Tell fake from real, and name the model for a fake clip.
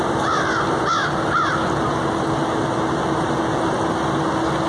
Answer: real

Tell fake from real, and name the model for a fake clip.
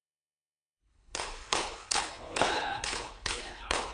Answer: fake, codec, HILCodec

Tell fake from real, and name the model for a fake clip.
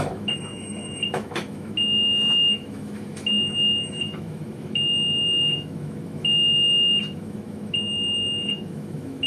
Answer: fake, autoencoder, DAC-VAE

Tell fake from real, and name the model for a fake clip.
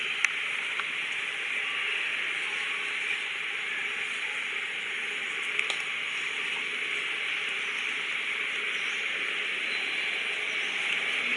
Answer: real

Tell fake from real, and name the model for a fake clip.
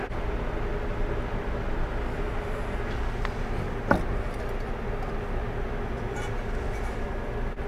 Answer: real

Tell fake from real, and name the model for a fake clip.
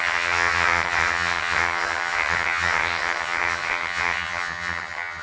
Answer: fake, vocoder, HiFi-GAN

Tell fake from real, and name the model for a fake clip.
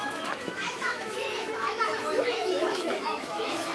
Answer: fake, autoencoder, DAC-VAE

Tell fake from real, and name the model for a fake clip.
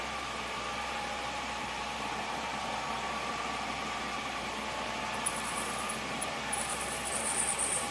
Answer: fake, vocoder, BigVGAN v2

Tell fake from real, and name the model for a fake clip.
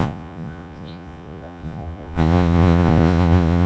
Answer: fake, vocoder, Vocos